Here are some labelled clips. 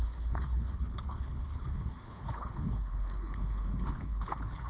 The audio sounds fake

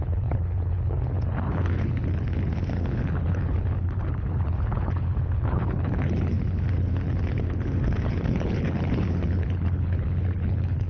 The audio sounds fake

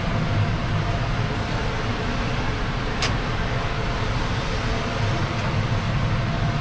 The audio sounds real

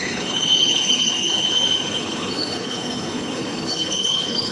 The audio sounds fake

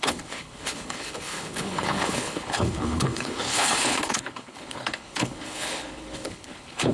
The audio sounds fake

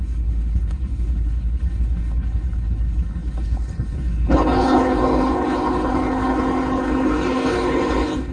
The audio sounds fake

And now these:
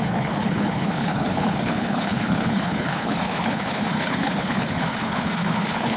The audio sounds fake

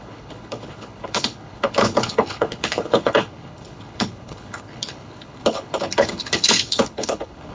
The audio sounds fake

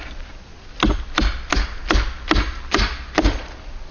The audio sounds real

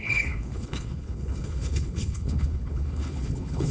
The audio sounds fake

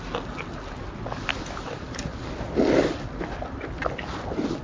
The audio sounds real